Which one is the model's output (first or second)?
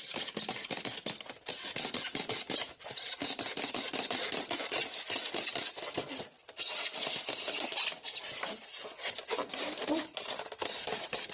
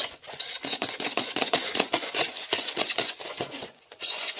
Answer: second